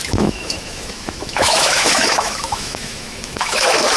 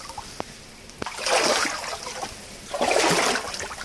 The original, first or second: second